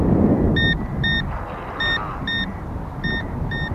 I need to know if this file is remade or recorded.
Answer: recorded